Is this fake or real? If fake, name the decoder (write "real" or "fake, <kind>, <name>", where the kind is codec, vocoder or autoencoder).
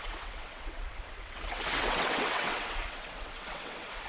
fake, vocoder, WaveNeXt